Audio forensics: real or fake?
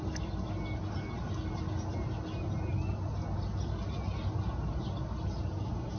real